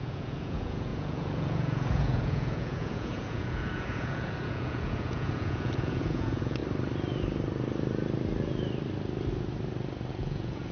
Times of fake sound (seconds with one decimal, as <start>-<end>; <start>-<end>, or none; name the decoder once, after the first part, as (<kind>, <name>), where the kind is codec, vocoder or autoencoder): 0.0-6.6 (vocoder, Vocos); 10.1-10.7

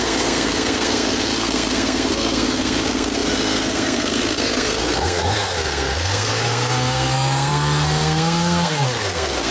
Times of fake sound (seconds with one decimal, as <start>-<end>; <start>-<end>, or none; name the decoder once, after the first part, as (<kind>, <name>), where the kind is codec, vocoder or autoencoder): 0.0-9.5 (codec, SNAC)